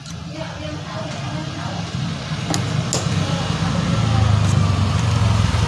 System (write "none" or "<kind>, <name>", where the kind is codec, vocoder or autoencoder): none